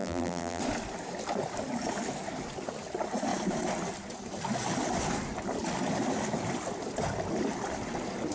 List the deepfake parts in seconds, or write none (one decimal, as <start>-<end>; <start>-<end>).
0.0-0.6